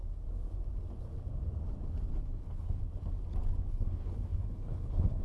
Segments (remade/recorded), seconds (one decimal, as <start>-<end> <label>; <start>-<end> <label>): 0.0-2.4 recorded; 2.4-2.8 remade; 2.8-3.7 recorded; 3.7-5.2 remade